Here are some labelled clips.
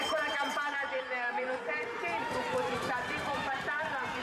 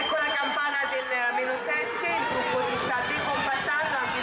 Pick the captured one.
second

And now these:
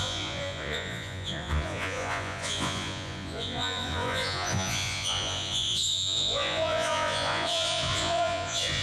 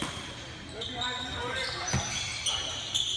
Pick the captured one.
second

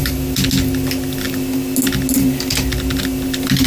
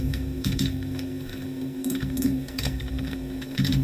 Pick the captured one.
first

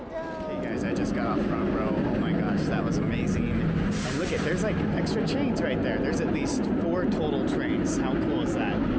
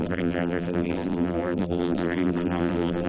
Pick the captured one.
first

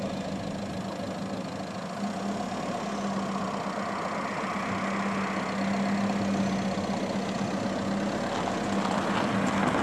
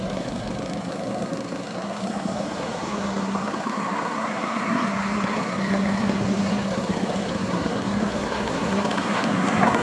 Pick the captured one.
first